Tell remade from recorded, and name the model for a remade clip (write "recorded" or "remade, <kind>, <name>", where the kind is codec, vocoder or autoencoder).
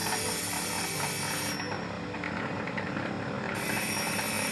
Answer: recorded